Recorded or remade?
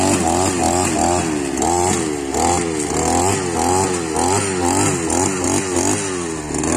recorded